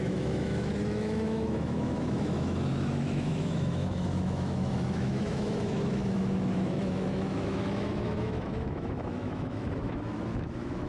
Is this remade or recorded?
remade